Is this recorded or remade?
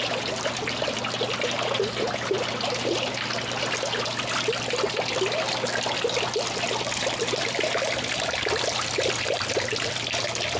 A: recorded